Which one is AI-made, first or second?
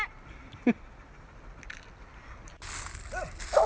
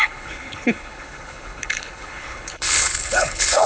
second